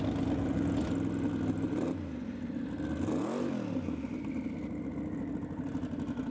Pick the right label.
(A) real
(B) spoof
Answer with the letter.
A